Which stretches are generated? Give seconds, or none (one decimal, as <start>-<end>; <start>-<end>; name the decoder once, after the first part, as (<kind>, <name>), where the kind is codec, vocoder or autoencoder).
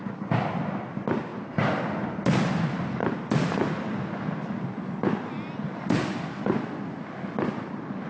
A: none